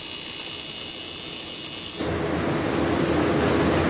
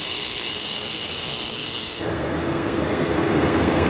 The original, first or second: first